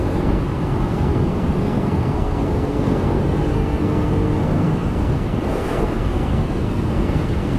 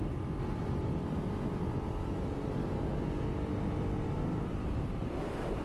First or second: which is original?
second